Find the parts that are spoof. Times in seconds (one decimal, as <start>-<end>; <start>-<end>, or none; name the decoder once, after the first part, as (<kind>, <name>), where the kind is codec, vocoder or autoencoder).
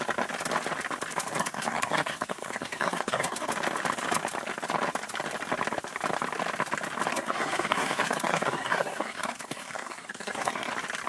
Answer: 1.4-3.5 (codec, SNAC); 7.1-10.7